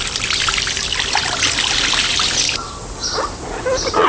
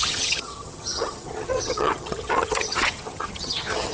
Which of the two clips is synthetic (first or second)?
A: second